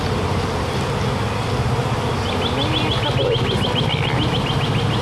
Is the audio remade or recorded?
recorded